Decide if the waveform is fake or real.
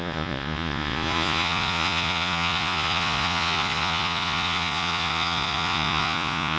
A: fake